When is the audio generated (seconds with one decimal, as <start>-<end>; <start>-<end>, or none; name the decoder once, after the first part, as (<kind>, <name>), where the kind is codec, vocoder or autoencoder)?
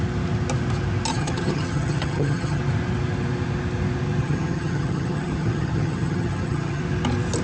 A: 1.1-2.6 (vocoder, HiFi-GAN); 4.2-6.8